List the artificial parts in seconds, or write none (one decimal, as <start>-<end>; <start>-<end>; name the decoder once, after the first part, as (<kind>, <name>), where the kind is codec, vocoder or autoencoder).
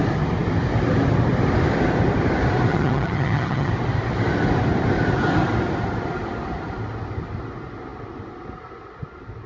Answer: 2.7-3.7 (vocoder, HiFi-GAN)